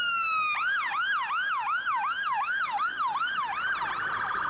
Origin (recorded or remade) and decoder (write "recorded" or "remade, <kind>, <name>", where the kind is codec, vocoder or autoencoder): recorded